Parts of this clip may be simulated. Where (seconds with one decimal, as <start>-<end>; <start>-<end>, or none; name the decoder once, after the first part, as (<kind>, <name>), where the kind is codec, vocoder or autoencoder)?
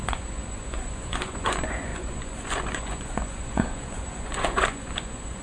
0.0-5.4 (vocoder, Vocos)